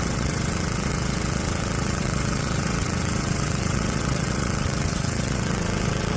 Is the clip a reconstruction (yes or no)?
yes